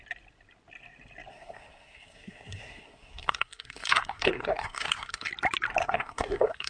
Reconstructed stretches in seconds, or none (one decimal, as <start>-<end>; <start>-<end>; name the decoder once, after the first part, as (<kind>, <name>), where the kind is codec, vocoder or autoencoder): 1.3-5.3 (codec, SNAC); 5.8-6.7